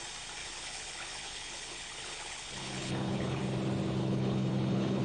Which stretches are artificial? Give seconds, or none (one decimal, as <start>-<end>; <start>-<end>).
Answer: 0.4-3.4; 4.0-5.0

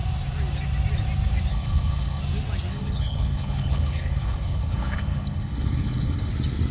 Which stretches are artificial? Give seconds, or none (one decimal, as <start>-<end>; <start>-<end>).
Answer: 1.5-2.2; 2.7-6.3

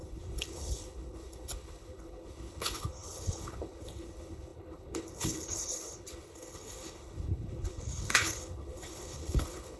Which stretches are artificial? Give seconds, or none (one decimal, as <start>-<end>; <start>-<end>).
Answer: 0.0-9.8